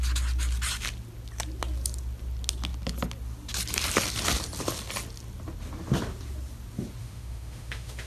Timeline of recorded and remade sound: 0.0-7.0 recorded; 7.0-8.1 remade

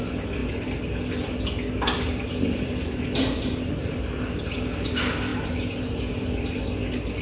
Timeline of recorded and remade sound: 0.0-7.2 recorded

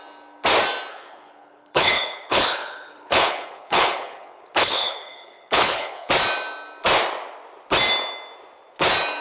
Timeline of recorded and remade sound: 0.0-0.9 recorded; 0.9-6.1 remade; 6.1-9.2 recorded

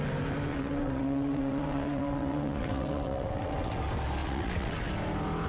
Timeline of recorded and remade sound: 0.0-0.5 recorded; 0.5-3.8 remade; 3.8-4.2 recorded; 4.2-4.9 remade; 4.9-5.5 recorded

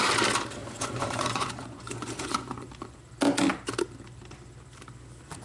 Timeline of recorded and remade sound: 0.0-0.6 recorded; 0.6-3.0 remade; 3.0-5.4 recorded

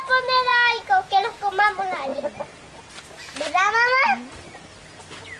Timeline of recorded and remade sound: 0.0-5.4 recorded

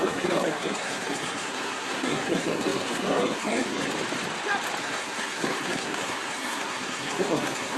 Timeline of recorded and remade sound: 0.0-3.9 remade; 3.9-4.8 recorded; 4.8-7.8 remade